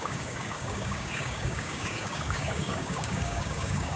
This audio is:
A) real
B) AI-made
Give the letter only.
B